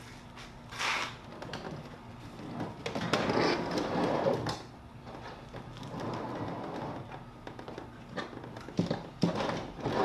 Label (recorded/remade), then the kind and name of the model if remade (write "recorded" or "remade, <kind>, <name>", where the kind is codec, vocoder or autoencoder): recorded